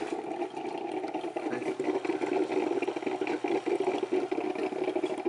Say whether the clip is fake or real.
real